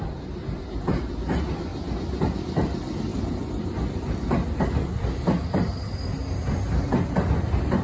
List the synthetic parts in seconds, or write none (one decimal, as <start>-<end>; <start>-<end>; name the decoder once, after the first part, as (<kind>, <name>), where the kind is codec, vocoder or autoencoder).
none